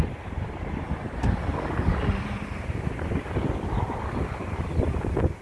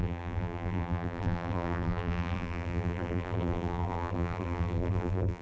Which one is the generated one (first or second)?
second